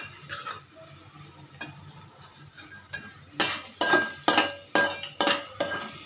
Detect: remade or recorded recorded